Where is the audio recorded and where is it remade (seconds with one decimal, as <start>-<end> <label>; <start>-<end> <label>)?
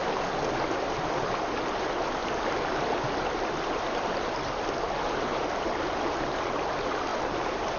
0.0-7.8 recorded